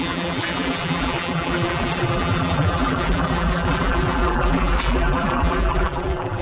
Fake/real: fake